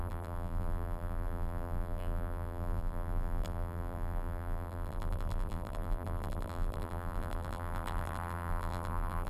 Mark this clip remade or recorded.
remade